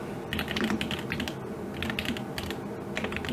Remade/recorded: recorded